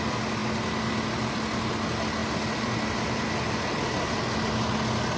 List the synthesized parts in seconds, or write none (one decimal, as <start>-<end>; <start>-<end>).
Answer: none